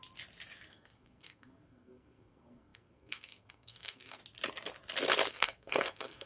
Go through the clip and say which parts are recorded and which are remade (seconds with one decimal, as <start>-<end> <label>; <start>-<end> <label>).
0.0-0.7 recorded; 0.7-4.2 remade; 4.2-5.3 recorded; 5.3-6.3 remade